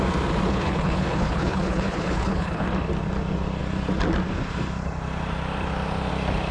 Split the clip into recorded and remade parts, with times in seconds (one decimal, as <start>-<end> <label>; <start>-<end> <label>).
0.0-0.5 recorded; 0.5-2.7 remade; 2.7-6.5 recorded